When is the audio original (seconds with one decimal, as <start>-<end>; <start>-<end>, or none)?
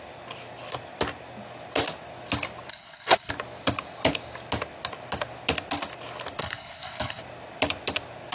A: 0.0-2.7; 3.3-6.4; 7.2-8.3